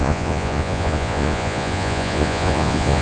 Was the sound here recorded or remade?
remade